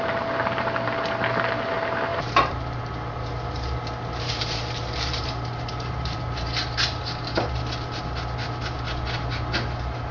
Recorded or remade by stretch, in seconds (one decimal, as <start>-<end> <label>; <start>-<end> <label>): 0.0-2.1 recorded; 2.1-6.5 remade; 6.5-10.1 recorded